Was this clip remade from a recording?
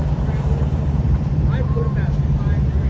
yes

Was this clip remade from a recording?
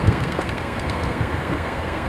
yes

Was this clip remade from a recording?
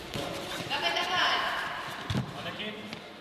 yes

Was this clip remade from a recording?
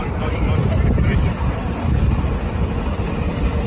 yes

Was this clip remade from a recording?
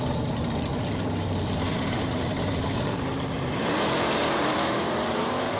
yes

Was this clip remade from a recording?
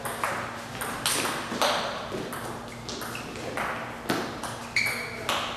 no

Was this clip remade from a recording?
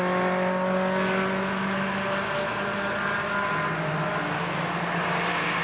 no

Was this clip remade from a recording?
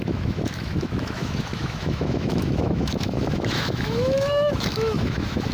yes